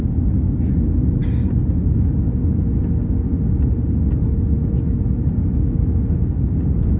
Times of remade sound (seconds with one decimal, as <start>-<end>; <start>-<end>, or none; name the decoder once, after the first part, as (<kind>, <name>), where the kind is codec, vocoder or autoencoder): none

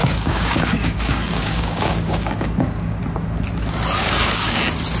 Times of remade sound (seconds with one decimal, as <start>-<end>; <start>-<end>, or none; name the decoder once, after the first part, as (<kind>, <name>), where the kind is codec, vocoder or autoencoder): 0.0-3.0 (codec, DAC); 4.0-4.6

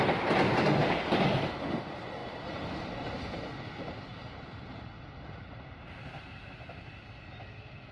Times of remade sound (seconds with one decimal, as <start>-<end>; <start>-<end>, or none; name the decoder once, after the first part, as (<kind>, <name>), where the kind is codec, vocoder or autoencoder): none

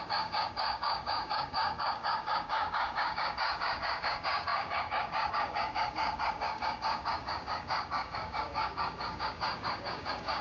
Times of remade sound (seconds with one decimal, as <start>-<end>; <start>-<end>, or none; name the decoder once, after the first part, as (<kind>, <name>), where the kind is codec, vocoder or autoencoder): 0.0-10.4 (codec, DAC)

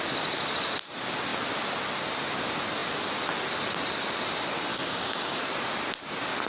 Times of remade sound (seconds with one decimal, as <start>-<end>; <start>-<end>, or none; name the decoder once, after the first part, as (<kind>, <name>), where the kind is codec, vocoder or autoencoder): 4.7-5.4 (codec, DAC)

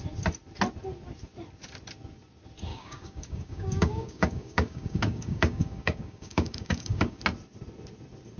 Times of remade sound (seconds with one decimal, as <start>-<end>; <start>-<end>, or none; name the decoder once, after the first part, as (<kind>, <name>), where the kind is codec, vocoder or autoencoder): 2.7-7.2 (codec, DAC)

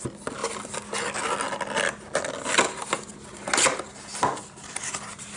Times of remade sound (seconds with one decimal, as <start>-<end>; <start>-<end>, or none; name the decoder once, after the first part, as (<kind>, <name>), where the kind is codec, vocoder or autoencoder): none

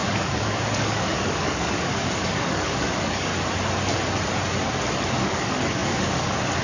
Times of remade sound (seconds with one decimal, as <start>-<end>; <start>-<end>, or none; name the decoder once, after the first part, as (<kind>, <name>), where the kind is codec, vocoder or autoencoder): 0.0-3.3 (codec, DAC); 5.1-6.6